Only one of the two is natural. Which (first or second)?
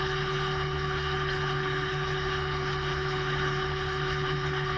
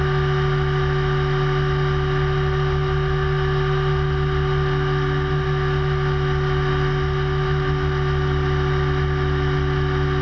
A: second